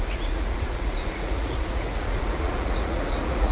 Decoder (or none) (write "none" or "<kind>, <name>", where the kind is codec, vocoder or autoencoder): vocoder, Vocos